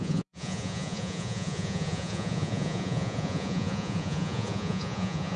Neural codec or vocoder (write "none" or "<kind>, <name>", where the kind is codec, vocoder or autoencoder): vocoder, Vocos